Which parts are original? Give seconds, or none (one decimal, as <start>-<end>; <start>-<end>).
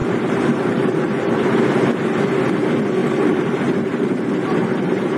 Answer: 1.6-3.0